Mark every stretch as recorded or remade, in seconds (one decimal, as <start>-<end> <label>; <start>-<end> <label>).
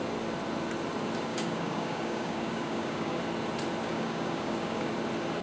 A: 0.0-1.3 recorded; 1.3-3.2 remade; 3.2-3.8 recorded; 3.8-4.9 remade; 4.9-5.4 recorded